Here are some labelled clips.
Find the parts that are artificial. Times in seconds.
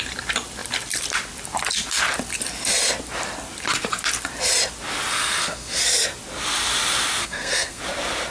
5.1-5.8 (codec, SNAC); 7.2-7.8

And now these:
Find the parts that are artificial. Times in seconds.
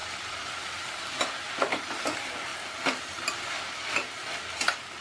0.0-2.5 (vocoder, BigVGAN v2)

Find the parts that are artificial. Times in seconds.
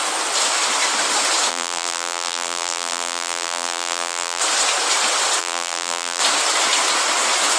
1.5-4.4 (vocoder, BigVGAN v2); 5.4-6.2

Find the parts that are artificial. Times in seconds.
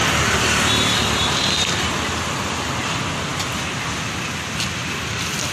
0.0-1.9 (vocoder, BigVGAN v2); 3.3-4.3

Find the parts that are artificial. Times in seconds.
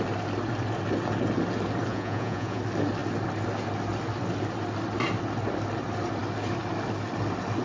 1.9-2.6 (vocoder, Vocos)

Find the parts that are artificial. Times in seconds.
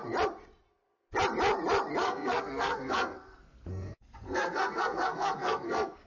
2.0-6.1 (codec, SNAC)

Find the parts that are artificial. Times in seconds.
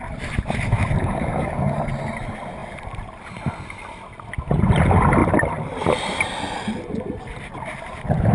1.0-1.8 (codec, DAC)